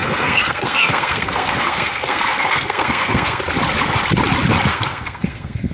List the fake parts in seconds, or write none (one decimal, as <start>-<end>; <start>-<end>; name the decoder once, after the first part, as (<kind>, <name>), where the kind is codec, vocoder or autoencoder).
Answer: 0.0-3.4 (codec, SNAC); 4.7-5.7